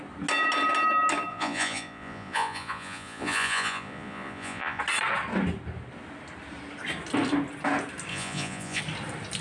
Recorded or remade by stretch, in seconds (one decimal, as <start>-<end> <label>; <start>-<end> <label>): 0.0-1.3 recorded; 1.3-4.8 remade; 4.8-8.1 recorded; 8.1-8.8 remade; 8.8-9.4 recorded